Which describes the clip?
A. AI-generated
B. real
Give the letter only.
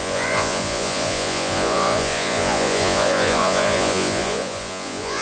A